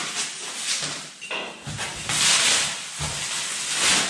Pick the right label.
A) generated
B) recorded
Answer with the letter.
B